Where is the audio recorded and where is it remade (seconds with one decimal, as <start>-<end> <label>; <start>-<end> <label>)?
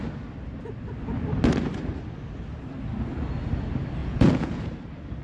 0.0-4.0 recorded; 4.0-4.7 remade; 4.7-5.2 recorded